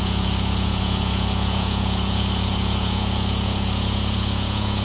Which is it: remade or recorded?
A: remade